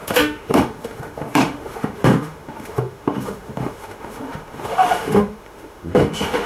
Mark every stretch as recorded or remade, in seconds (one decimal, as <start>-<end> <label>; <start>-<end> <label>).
0.0-6.5 remade